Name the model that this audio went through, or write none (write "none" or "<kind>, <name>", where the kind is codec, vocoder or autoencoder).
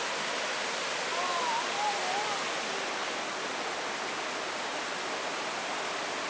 none